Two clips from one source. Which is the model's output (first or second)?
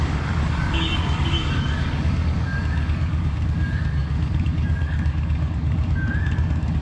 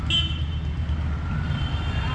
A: first